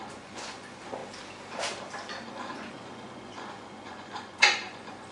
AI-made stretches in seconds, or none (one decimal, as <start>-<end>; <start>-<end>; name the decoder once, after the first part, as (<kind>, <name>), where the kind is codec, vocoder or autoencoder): 0.0-1.0 (vocoder, Vocos); 2.3-5.1